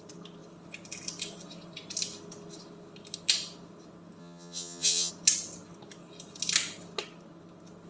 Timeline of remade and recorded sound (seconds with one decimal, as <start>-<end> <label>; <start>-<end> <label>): 0.0-4.2 recorded; 4.2-5.1 remade; 5.1-7.9 recorded